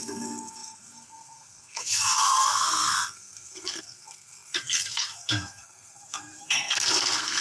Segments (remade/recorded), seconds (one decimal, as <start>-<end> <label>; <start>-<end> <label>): 0.0-7.4 remade